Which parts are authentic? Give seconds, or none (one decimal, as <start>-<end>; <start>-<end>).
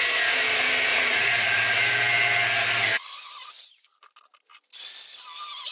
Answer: 0.0-0.9; 1.6-2.9; 4.0-5.7